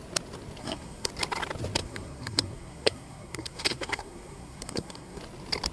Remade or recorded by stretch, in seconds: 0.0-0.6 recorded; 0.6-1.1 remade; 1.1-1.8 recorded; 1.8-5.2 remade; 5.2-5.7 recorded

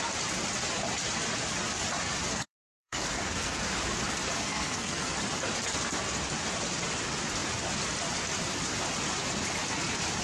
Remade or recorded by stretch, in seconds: 0.0-2.3 recorded; 2.3-3.6 remade; 3.6-4.4 recorded; 4.4-5.1 remade; 5.1-10.2 recorded

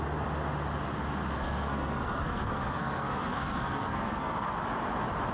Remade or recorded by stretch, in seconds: 0.0-1.4 recorded; 1.4-4.6 remade; 4.6-5.3 recorded